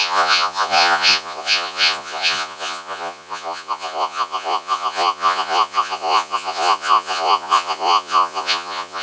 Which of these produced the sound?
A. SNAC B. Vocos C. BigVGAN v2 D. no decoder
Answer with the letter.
B